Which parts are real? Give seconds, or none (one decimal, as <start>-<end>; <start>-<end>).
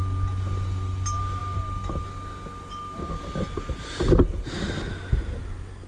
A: 0.0-5.9